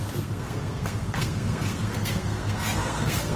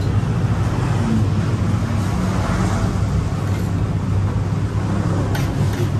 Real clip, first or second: second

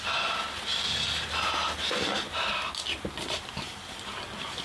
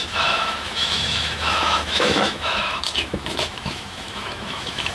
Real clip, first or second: first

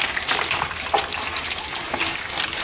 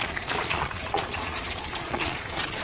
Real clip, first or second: first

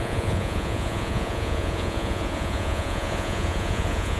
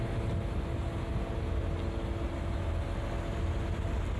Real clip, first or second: second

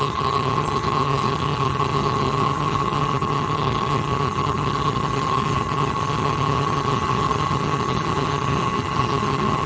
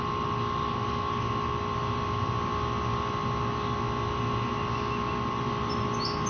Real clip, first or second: second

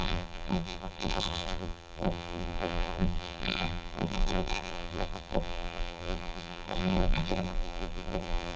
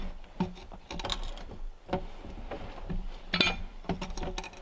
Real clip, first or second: second